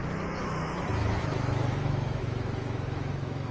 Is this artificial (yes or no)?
yes